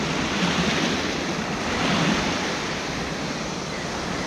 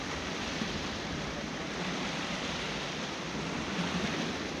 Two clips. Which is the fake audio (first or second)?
second